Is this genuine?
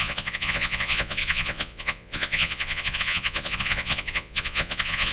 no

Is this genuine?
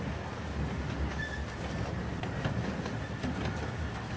yes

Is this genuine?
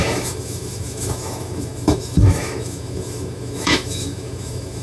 no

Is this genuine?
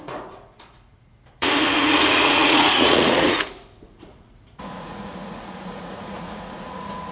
no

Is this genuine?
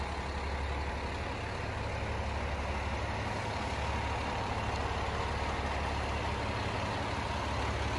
yes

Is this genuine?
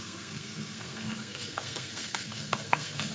no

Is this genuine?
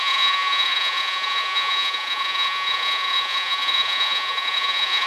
no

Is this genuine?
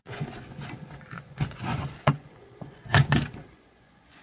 no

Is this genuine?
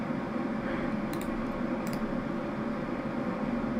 no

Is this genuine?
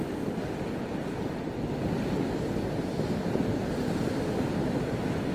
yes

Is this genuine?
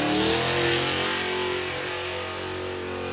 yes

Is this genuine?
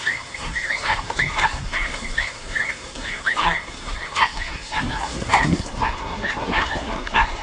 no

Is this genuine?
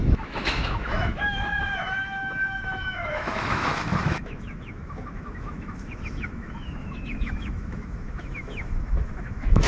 no